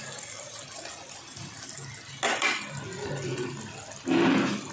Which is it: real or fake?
real